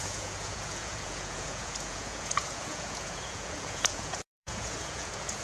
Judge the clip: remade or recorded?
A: remade